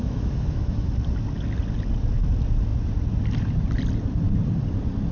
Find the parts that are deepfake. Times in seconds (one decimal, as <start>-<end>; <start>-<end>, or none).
0.0-0.9